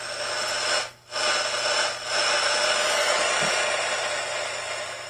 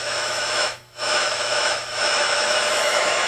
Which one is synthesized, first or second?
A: second